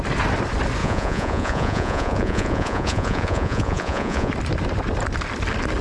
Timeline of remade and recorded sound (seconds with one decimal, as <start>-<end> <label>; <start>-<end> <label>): 0.0-0.8 recorded; 0.8-4.3 remade; 4.3-5.8 recorded